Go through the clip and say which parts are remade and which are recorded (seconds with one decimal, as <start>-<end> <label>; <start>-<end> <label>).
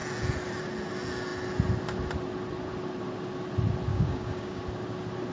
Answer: 0.0-3.9 recorded; 3.9-4.6 remade; 4.6-5.3 recorded